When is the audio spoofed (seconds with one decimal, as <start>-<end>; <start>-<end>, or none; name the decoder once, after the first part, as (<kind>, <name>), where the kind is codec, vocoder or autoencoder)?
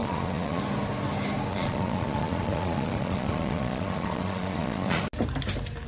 0.0-0.6 (vocoder, Vocos); 1.5-5.0